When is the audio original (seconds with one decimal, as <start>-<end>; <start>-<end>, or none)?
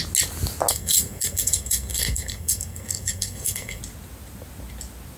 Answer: 0.0-0.7; 3.8-5.2